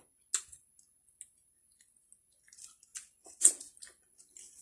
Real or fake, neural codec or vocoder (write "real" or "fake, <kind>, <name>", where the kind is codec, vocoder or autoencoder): real